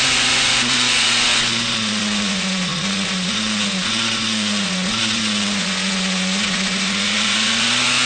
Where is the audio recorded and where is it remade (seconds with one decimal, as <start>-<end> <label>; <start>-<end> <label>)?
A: 0.0-8.1 remade